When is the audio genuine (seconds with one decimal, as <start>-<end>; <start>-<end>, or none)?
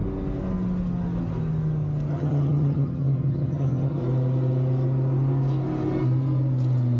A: 0.0-2.1; 4.0-7.0